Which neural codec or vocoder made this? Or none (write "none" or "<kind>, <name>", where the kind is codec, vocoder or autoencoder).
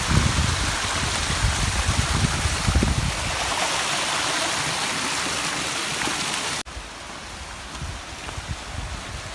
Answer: none